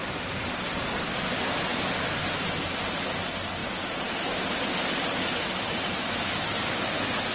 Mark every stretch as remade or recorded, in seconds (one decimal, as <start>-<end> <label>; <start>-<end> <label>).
0.0-0.5 remade; 0.5-3.6 recorded; 3.6-6.3 remade; 6.3-7.3 recorded